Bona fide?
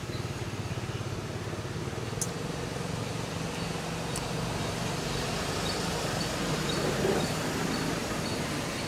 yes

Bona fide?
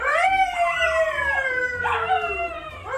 no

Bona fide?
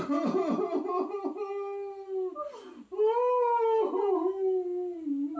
yes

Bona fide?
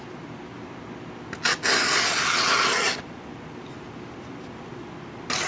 yes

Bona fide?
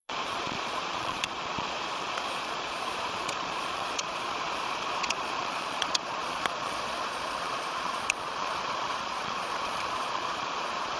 no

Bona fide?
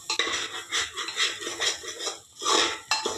yes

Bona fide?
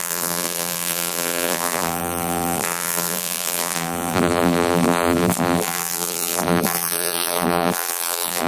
no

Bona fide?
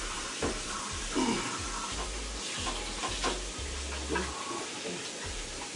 yes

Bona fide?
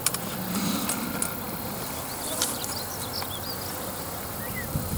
no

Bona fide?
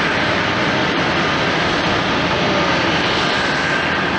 yes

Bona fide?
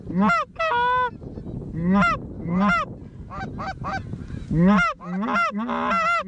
yes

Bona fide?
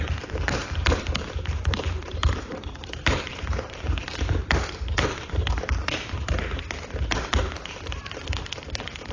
no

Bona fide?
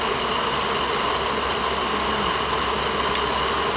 yes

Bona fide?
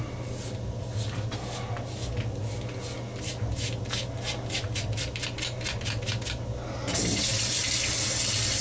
yes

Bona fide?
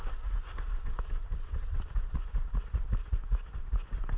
yes